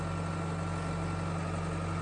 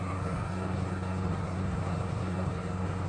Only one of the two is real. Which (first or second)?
first